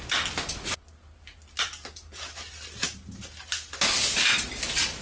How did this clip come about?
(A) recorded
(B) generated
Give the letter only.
A